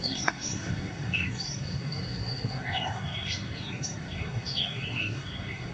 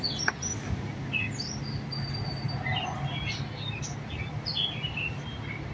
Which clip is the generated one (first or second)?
first